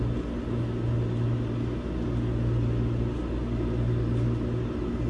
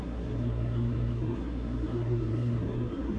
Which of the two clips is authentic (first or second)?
first